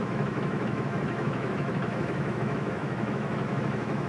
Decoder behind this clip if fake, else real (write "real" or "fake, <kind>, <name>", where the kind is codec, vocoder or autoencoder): fake, autoencoder, DAC-VAE